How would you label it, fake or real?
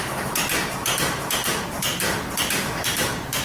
fake